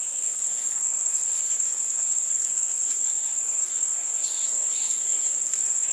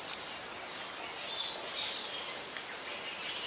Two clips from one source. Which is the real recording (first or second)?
second